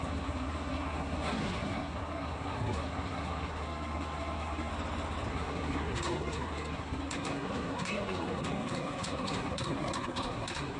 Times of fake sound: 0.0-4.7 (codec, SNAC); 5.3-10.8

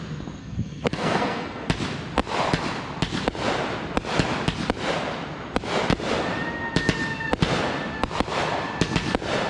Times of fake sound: 0.4-1.7 (codec, SNAC)

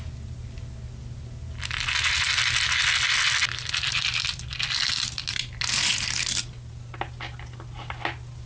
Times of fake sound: none

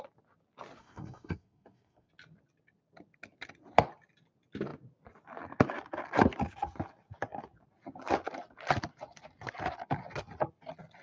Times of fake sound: 0.8-2.1 (codec, SNAC)

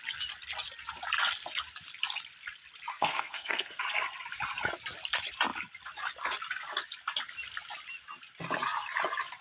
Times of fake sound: 2.9-3.8 (codec, SNAC)

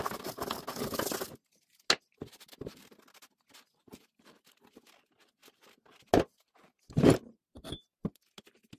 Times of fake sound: none

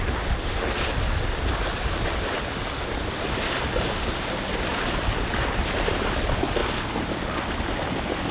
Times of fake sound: none